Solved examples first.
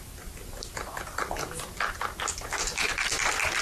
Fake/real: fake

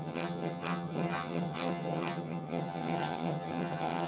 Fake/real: fake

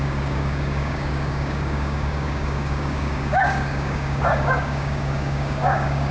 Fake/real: fake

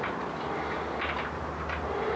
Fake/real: real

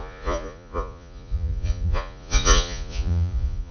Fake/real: fake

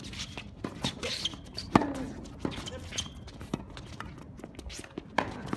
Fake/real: real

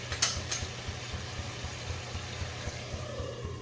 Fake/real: real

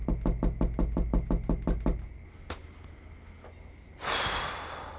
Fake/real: real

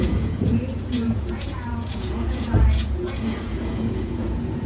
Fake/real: fake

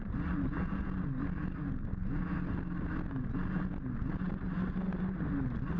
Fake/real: real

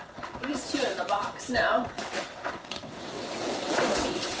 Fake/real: fake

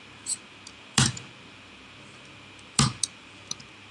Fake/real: fake